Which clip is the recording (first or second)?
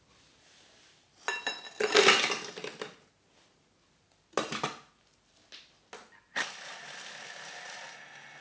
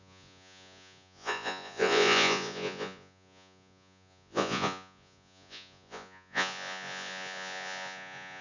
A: first